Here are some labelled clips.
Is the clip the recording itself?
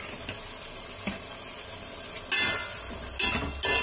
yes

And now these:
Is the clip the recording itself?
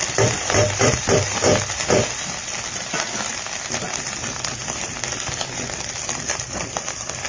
no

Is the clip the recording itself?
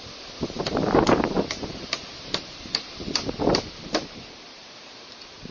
no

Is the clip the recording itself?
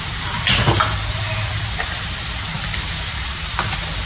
yes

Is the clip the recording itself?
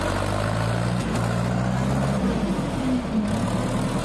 yes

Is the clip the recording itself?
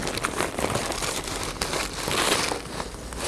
yes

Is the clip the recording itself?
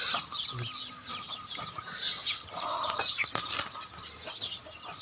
yes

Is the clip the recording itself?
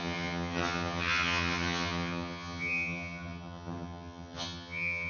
no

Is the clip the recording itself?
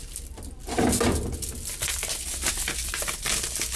yes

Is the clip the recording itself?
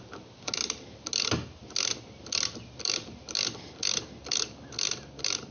yes